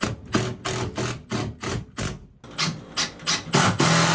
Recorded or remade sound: recorded